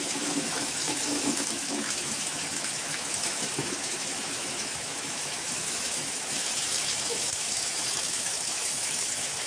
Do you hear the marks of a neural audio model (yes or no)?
yes